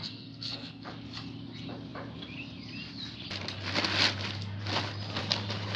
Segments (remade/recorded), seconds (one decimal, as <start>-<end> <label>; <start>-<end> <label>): 0.0-0.9 remade; 0.9-5.8 recorded